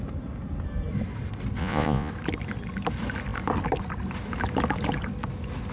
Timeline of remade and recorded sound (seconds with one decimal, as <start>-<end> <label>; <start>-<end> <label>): 0.0-1.6 recorded; 1.6-2.1 remade; 2.1-5.7 recorded